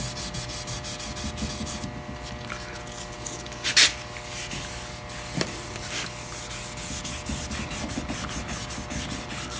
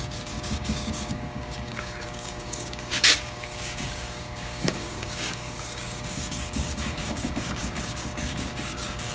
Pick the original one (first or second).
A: first